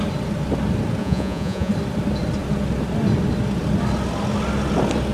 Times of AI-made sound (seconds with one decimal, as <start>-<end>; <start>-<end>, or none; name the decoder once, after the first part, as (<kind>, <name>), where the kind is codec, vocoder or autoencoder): 1.0-1.7 (vocoder, Vocos)